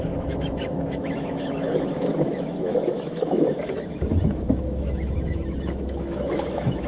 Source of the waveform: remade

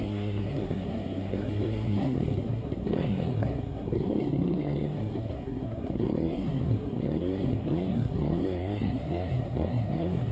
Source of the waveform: remade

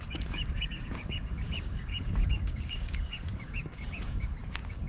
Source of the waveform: remade